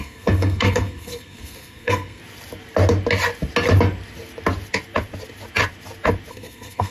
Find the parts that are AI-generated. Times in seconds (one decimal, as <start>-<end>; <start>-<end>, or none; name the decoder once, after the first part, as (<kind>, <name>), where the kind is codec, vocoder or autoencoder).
0.0-2.2 (codec, SNAC); 6.3-6.9